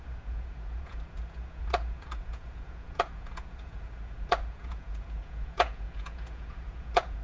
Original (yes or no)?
no